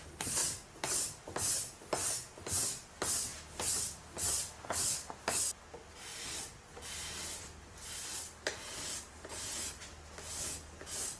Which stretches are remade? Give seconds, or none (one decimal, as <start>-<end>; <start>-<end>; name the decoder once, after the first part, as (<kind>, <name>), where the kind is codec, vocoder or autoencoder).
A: 6.1-9.1 (vocoder, BigVGAN v2)